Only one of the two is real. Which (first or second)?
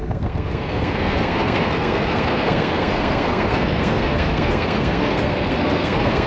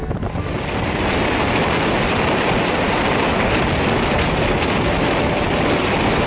second